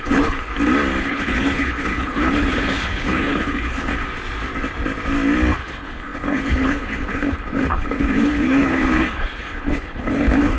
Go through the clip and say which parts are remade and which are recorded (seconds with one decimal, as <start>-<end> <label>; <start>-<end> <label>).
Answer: 0.0-0.5 remade; 0.5-1.0 recorded; 1.0-3.9 remade; 3.9-5.6 recorded; 5.6-10.6 remade

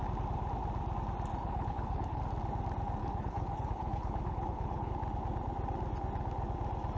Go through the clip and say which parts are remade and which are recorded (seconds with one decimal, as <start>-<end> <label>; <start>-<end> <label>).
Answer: 0.0-1.3 recorded; 1.3-2.2 remade; 2.2-3.0 recorded; 3.0-4.9 remade; 4.9-7.0 recorded

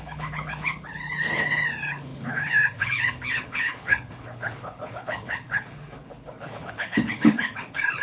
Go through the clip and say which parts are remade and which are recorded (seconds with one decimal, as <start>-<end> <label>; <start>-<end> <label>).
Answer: 0.0-8.0 remade